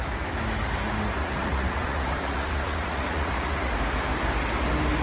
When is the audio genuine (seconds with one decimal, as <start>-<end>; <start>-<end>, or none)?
0.0-1.2; 3.7-5.0

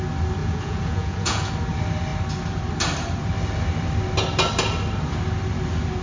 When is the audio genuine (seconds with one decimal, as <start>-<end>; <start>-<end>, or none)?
0.0-0.4; 1.5-6.0

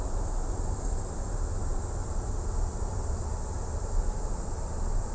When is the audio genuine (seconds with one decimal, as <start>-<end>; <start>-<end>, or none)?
0.0-5.1

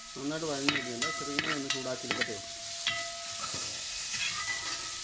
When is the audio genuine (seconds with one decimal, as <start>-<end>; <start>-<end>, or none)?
0.0-3.4; 4.2-5.0

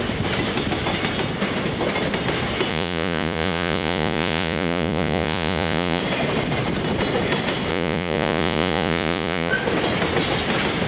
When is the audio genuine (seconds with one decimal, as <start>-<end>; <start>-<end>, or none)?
0.0-2.7; 6.0-7.7; 9.5-10.9